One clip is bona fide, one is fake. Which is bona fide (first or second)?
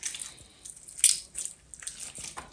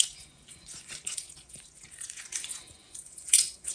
first